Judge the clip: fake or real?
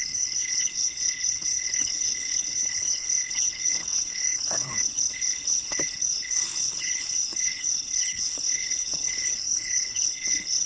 fake